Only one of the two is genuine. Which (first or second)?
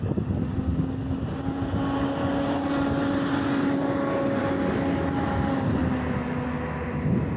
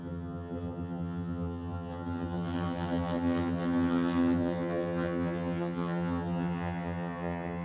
first